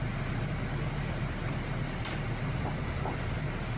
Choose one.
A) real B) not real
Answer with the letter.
A